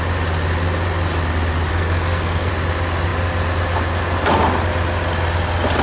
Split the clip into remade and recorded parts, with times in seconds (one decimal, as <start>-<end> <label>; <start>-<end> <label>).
0.0-1.7 recorded; 1.7-2.5 remade; 2.5-5.8 recorded